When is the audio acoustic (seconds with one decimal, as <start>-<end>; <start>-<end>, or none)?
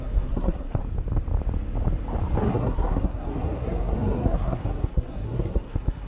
0.8-2.4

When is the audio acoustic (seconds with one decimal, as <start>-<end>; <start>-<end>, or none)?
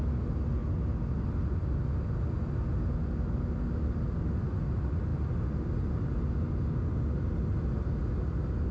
0.0-8.7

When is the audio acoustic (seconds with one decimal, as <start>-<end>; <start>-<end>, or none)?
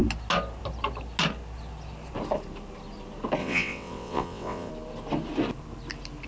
0.0-3.4; 4.7-6.3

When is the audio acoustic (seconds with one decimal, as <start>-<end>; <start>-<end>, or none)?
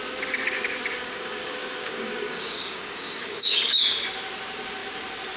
0.0-1.0; 4.0-5.4